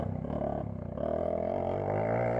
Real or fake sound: real